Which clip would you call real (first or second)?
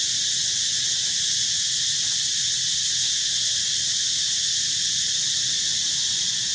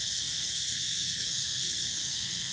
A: first